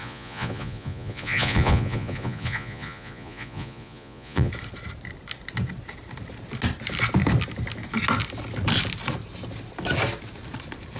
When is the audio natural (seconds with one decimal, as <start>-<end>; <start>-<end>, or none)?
4.5-11.0